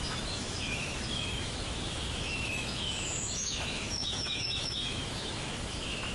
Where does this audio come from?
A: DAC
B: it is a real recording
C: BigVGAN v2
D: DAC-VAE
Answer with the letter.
D